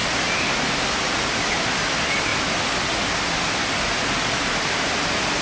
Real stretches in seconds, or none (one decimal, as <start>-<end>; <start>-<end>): 0.0-5.4